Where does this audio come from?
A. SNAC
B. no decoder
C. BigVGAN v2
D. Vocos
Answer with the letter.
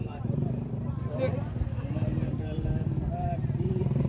C